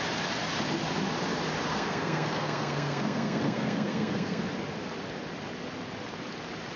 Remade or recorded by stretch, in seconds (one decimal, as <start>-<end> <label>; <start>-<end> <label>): 0.0-1.7 recorded; 1.7-4.5 remade; 4.5-6.8 recorded